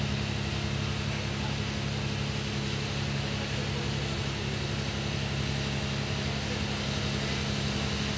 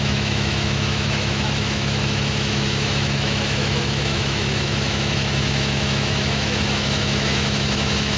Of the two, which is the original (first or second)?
first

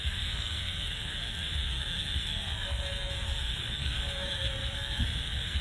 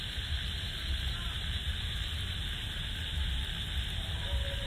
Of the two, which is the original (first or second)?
second